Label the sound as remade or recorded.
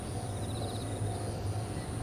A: recorded